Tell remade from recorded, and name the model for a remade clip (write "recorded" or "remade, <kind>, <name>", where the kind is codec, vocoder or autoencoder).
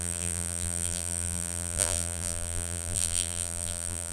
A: remade, vocoder, BigVGAN v2